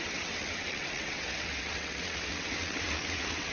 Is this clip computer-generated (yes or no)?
yes